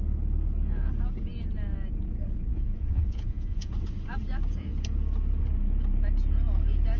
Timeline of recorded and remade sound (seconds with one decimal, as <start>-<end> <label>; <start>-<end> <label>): 0.0-2.5 recorded; 2.5-3.7 remade; 3.7-7.0 recorded